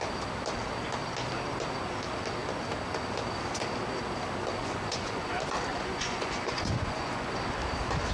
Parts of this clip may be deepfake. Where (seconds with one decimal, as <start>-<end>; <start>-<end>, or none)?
4.6-5.3; 5.7-7.3